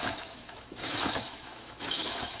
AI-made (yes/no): yes